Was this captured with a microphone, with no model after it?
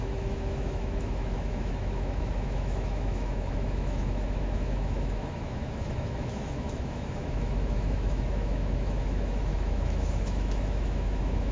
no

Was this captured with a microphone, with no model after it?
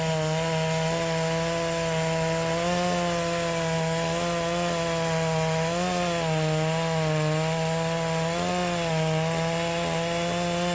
yes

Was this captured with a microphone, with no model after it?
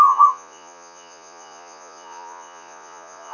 no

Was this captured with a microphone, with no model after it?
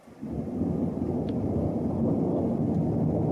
yes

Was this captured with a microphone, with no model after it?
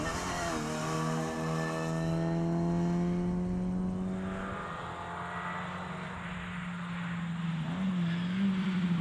yes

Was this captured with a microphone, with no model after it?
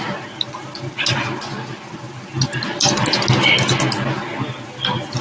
yes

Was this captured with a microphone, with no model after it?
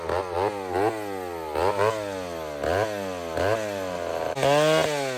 yes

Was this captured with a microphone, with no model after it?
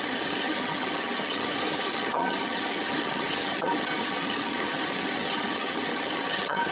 no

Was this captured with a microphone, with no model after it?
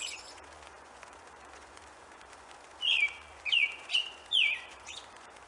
no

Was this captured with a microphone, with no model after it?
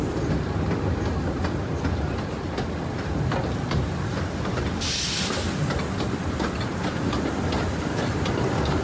yes